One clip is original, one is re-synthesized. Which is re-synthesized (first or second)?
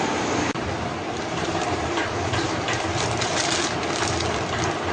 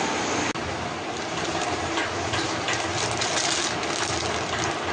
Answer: first